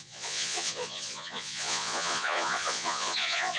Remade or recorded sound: remade